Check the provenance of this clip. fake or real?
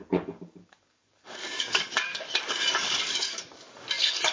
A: fake